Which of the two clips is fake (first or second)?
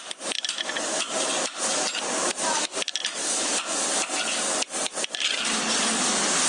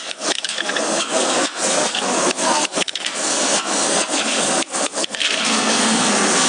second